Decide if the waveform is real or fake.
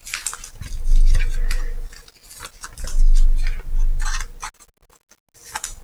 real